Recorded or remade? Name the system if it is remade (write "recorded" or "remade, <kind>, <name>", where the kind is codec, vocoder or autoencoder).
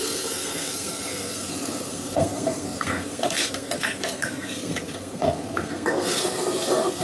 remade, codec, SNAC